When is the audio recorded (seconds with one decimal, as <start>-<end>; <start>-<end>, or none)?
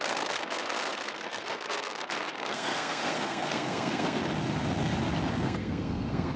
4.2-5.3